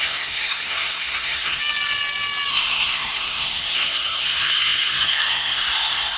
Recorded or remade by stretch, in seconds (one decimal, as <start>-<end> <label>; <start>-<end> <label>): 0.0-1.6 remade; 1.6-2.5 recorded; 2.5-6.2 remade